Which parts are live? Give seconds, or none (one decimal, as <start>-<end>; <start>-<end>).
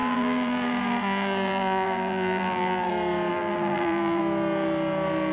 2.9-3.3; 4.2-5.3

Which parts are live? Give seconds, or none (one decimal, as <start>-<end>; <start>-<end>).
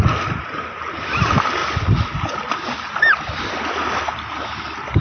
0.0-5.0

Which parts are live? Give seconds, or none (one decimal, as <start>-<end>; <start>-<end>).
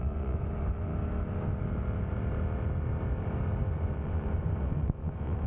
0.9-3.6